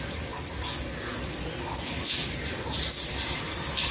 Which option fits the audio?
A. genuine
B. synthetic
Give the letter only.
A